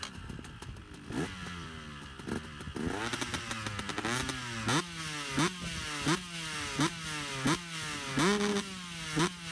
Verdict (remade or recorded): recorded